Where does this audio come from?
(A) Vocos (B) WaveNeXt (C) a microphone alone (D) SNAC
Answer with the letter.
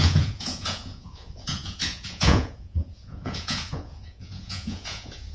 A